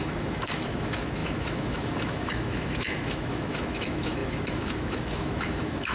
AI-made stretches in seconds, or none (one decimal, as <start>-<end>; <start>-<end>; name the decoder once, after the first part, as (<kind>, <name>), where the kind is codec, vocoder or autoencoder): 0.0-5.9 (autoencoder, DAC-VAE)

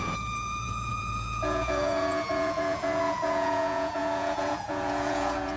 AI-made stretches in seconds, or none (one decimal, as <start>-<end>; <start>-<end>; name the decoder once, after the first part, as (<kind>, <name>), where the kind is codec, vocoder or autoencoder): 0.0-5.6 (vocoder, Vocos)

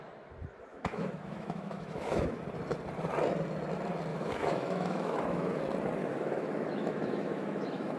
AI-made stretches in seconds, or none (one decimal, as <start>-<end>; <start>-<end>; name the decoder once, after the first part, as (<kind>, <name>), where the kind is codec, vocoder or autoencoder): 0.7-2.4 (autoencoder, DAC-VAE); 4.1-5.6; 6.0-8.0

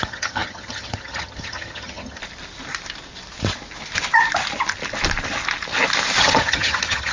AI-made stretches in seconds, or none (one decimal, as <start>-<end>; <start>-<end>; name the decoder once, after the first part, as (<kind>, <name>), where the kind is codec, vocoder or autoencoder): 0.0-2.2 (vocoder, HiFi-GAN); 6.2-7.1

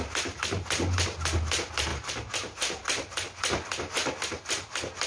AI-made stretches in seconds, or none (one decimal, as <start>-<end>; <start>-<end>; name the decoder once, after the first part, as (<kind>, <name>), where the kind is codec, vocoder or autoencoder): none

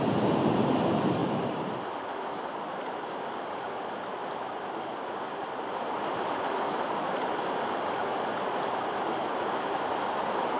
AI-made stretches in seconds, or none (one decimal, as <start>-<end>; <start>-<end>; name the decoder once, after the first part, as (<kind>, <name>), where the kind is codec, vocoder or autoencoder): none

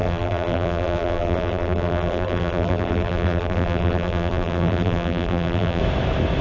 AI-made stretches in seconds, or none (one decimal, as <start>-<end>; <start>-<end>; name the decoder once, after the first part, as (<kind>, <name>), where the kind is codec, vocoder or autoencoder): 0.0-5.8 (vocoder, BigVGAN v2)